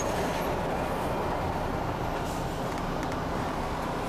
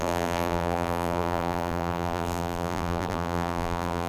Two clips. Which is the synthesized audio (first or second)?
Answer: second